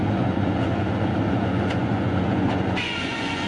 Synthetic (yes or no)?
yes